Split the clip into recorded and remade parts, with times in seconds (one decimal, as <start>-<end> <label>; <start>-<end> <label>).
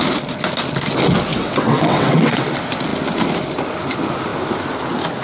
0.0-1.3 recorded; 1.3-2.5 remade; 2.5-5.2 recorded